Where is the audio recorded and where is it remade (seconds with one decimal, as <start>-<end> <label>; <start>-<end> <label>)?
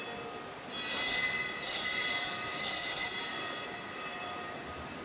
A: 0.0-2.0 recorded; 2.0-5.0 remade